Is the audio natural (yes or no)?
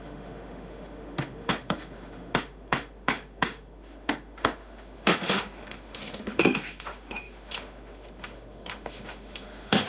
no